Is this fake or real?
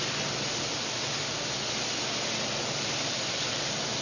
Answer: real